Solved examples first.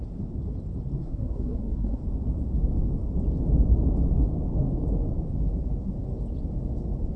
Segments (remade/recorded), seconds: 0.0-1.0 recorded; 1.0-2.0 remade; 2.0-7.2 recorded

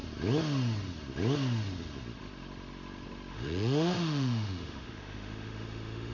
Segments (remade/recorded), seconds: 0.0-3.3 recorded; 3.3-6.1 remade